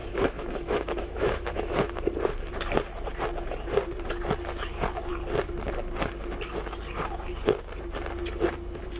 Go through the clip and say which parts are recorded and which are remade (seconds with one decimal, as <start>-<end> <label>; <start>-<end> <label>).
0.0-1.9 remade; 1.9-9.0 recorded